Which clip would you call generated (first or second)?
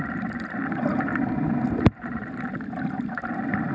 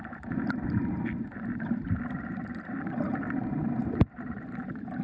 second